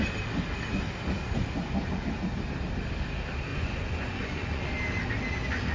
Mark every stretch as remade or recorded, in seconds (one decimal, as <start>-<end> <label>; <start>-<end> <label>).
0.0-3.5 recorded; 3.5-4.6 remade; 4.6-5.7 recorded